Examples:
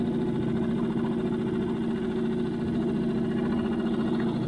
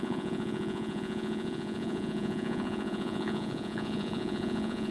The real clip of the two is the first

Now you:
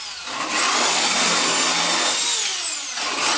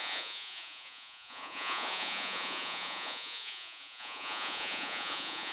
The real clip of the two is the first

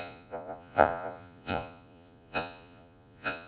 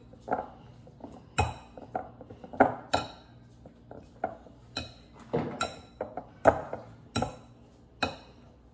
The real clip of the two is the second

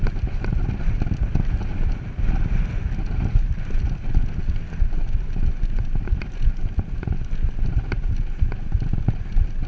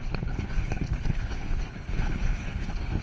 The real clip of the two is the first